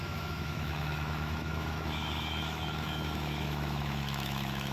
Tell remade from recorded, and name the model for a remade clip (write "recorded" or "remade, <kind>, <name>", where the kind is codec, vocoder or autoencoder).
remade, autoencoder, DAC-VAE